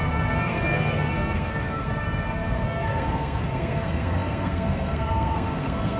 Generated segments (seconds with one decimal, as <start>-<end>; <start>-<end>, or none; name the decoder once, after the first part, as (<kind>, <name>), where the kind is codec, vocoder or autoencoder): 0.0-6.0 (codec, SNAC)